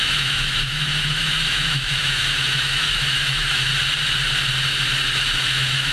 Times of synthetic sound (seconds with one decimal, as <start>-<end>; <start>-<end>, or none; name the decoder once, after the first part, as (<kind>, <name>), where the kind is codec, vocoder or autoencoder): 0.0-3.7 (autoencoder, DAC-VAE); 5.5-5.9